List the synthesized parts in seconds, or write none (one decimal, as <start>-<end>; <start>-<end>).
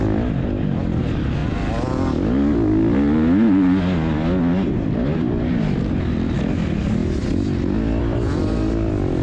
none